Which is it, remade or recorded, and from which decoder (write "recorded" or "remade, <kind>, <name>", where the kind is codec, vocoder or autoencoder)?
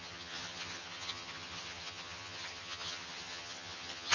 remade, vocoder, HiFi-GAN